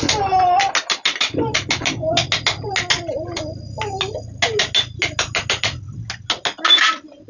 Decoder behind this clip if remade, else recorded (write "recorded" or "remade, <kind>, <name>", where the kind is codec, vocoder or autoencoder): recorded